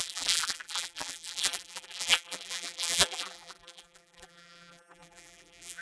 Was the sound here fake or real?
fake